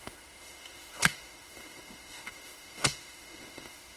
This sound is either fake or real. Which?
fake